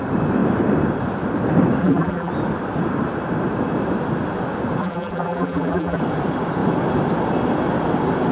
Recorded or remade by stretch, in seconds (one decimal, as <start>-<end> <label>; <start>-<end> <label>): 0.0-1.8 recorded; 1.8-2.3 remade; 2.3-4.8 recorded; 4.8-6.0 remade; 6.0-8.3 recorded